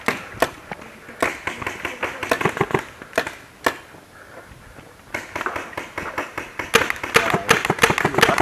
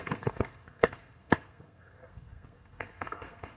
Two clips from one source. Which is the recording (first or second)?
first